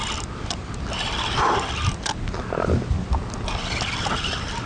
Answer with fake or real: real